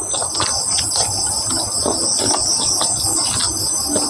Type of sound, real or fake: real